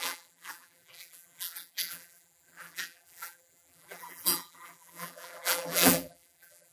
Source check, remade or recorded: remade